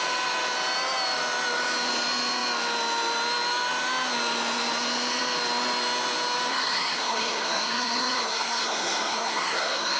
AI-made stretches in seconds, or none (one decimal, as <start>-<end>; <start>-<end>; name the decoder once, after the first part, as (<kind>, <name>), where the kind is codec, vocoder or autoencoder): 6.5-10.0 (codec, SNAC)